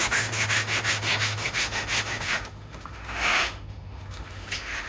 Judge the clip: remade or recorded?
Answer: remade